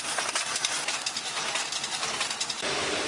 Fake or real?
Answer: real